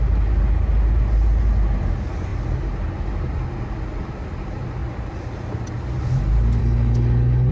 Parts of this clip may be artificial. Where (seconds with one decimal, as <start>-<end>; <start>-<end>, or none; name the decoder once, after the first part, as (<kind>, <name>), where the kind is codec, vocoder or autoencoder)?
6.6-7.5 (codec, HILCodec)